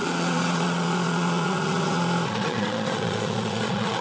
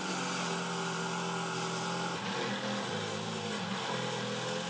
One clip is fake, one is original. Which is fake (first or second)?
first